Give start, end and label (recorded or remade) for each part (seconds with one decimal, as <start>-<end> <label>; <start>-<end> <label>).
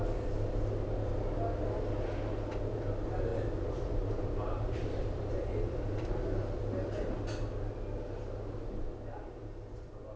0.0-3.3 recorded; 3.3-6.2 remade; 6.2-10.2 recorded